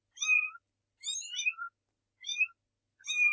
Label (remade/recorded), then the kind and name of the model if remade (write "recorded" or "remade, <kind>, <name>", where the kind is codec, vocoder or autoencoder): recorded